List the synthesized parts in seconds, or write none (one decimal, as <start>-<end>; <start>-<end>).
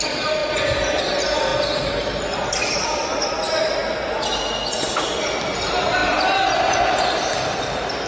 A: 0.0-0.4; 1.0-3.8; 5.1-8.1